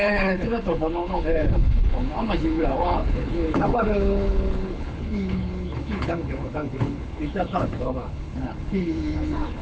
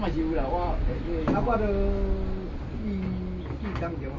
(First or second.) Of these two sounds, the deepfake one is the first